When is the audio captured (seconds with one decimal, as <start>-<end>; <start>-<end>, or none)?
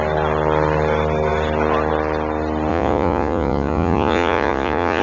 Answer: 0.0-2.7